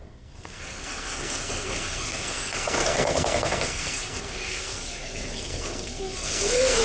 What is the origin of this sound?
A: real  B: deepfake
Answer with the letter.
B